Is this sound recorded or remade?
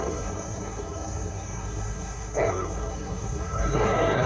remade